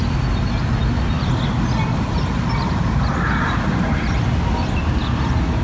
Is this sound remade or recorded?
recorded